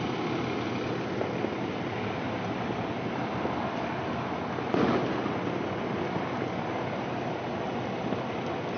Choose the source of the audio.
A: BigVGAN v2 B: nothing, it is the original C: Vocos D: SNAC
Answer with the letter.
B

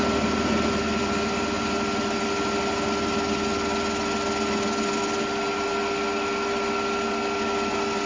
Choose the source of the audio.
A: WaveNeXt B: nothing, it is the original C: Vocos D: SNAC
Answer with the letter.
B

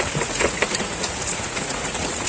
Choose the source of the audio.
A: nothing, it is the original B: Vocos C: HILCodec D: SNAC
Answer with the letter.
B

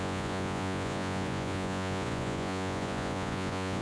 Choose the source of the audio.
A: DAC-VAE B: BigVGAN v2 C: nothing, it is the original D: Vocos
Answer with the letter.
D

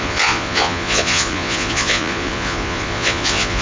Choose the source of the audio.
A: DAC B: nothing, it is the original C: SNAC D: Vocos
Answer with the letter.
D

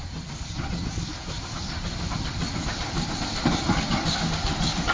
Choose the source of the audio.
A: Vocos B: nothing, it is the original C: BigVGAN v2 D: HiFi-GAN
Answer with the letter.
B